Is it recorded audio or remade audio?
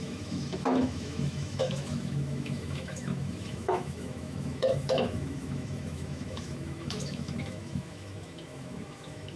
remade